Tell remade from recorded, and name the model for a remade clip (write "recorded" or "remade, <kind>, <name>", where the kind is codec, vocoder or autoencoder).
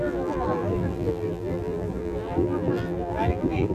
remade, vocoder, BigVGAN v2